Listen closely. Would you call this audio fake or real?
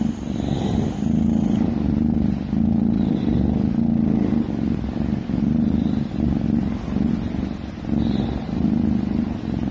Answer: real